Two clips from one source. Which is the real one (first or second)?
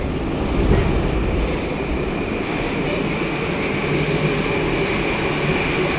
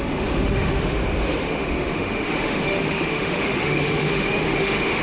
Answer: first